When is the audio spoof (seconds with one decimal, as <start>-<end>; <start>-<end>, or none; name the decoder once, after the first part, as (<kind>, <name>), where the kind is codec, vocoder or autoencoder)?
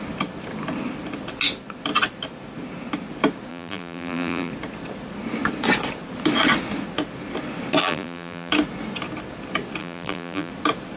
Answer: 3.5-4.5 (vocoder, BigVGAN v2); 7.8-8.5; 9.8-10.5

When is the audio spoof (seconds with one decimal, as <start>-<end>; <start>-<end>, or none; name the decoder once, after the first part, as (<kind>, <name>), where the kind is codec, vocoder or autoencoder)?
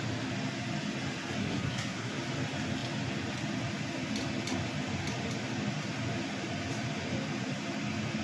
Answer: 1.4-2.1 (codec, SNAC)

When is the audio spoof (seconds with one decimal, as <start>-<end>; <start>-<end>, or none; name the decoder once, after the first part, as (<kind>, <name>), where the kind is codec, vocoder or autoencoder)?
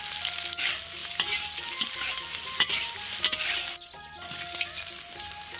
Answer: none